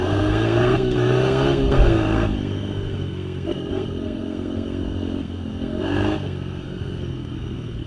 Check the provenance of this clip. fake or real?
fake